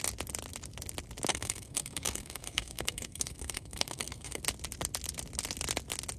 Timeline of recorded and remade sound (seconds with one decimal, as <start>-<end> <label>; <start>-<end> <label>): 0.0-1.3 recorded; 1.3-4.4 remade; 4.4-6.2 recorded